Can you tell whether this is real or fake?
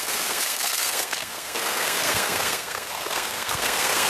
fake